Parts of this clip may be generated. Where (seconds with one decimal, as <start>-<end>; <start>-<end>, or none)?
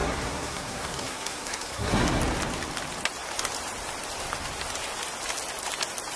0.0-2.2